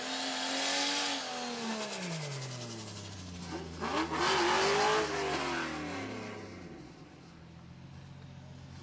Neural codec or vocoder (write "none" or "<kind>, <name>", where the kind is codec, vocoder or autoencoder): none